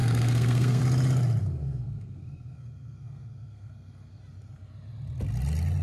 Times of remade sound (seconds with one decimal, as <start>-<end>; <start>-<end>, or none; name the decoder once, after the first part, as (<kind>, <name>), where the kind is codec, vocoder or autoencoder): 0.0-0.8 (codec, SNAC); 1.4-4.2